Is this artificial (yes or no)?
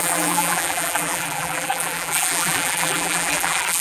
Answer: yes